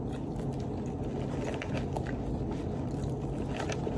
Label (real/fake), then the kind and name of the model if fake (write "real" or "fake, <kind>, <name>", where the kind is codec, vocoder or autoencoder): real